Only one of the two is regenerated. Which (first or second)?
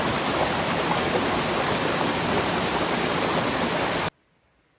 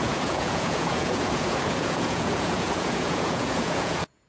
second